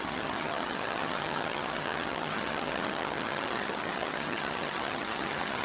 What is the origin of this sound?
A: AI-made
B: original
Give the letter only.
A